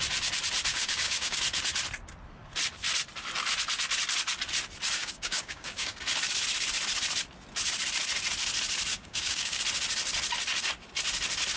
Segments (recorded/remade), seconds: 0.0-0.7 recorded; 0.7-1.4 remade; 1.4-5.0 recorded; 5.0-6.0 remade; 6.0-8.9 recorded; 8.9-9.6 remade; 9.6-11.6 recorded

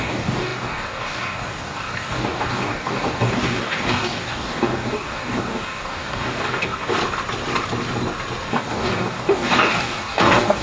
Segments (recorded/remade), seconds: 0.0-7.0 remade; 7.0-8.5 recorded; 8.5-10.6 remade

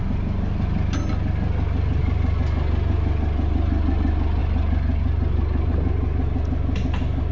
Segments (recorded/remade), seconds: 0.0-7.3 recorded

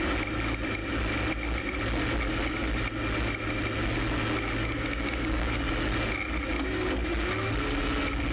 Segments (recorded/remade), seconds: 0.0-4.6 recorded; 4.6-5.7 remade; 5.7-8.3 recorded

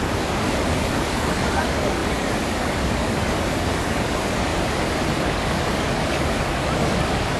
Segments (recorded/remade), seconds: 0.0-4.5 remade; 4.5-5.1 recorded; 5.1-7.4 remade